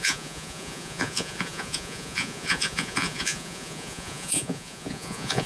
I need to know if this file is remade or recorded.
remade